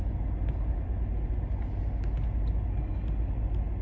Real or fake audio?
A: real